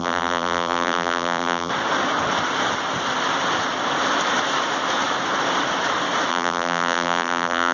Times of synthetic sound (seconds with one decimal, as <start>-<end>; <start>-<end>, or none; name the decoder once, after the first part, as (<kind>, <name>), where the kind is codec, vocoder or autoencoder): 0.0-1.7 (vocoder, BigVGAN v2); 6.3-7.7